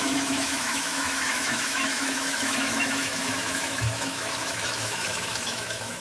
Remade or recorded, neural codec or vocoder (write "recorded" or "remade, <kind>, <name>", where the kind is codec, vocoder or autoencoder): remade, autoencoder, DAC-VAE